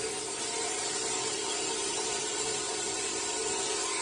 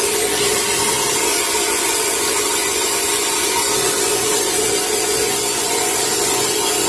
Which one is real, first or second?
first